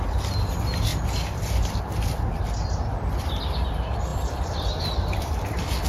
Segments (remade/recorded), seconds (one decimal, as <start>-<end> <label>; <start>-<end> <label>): 0.0-0.9 recorded; 0.9-1.8 remade; 1.8-2.6 recorded; 2.6-3.4 remade; 3.4-4.1 recorded; 4.1-5.3 remade; 5.3-5.9 recorded